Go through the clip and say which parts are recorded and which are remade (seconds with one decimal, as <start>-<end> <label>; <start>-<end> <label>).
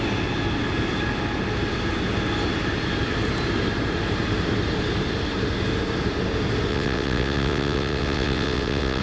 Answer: 0.0-6.7 recorded; 6.7-9.0 remade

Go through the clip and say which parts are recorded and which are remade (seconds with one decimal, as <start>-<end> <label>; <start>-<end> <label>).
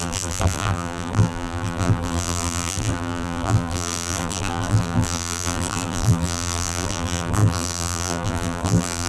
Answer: 0.0-9.1 remade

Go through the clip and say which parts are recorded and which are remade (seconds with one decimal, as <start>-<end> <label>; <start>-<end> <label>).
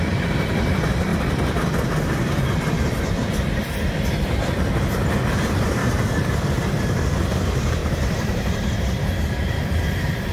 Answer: 0.0-1.1 remade; 1.1-5.3 recorded; 5.3-5.8 remade; 5.8-6.3 recorded; 6.3-10.3 remade